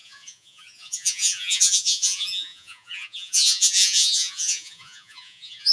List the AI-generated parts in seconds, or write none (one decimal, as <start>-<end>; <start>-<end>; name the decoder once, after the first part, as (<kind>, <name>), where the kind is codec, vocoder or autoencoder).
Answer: 0.0-5.7 (vocoder, Vocos)

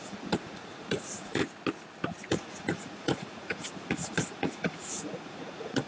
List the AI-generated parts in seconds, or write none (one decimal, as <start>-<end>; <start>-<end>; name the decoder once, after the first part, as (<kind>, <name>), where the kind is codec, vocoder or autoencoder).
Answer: 0.0-1.4 (vocoder, Vocos); 2.3-5.9